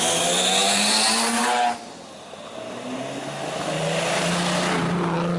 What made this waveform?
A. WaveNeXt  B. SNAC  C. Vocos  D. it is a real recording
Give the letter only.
D